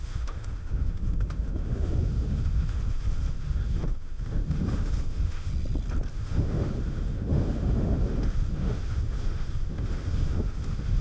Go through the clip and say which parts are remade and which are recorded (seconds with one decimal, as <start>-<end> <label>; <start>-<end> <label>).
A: 0.0-5.5 remade; 5.5-6.1 recorded; 6.1-11.0 remade